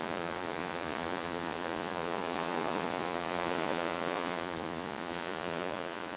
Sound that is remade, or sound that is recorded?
remade